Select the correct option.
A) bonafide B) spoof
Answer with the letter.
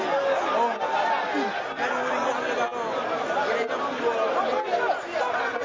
A